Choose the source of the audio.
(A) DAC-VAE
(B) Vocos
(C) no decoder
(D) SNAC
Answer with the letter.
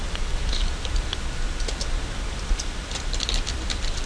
C